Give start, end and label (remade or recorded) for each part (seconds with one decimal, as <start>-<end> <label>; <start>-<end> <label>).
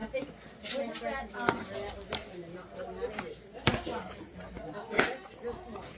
0.0-6.0 recorded